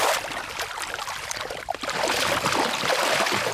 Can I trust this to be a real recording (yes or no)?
no